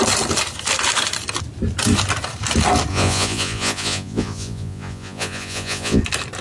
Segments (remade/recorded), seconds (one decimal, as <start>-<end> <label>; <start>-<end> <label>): 0.0-2.9 recorded; 2.9-6.0 remade; 6.0-6.4 recorded